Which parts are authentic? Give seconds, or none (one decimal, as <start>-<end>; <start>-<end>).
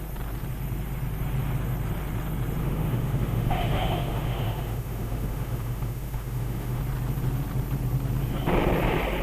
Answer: 0.0-2.6; 6.8-9.2